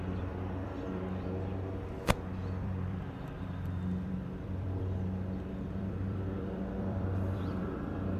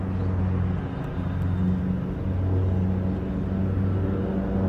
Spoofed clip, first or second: first